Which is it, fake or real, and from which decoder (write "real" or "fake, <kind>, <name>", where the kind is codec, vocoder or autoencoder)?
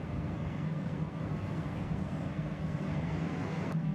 fake, codec, SNAC